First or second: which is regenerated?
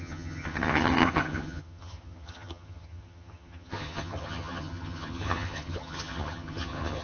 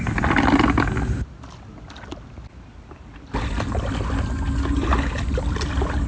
first